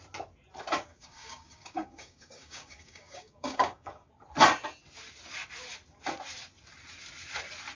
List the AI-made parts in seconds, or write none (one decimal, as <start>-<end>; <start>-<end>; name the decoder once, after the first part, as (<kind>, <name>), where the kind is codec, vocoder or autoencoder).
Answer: 0.9-4.1 (codec, DAC)